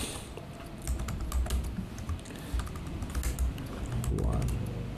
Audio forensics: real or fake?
real